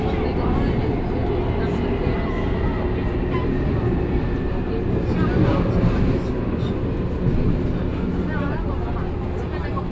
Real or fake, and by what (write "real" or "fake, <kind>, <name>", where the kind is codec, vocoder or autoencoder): real